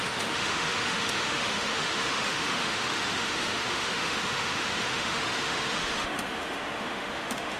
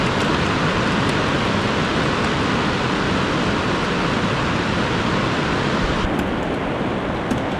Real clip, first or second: second